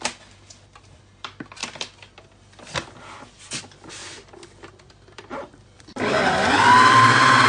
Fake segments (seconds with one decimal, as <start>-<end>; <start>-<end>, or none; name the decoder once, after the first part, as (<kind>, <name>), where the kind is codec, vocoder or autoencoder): 4.0-7.5 (vocoder, BigVGAN v2)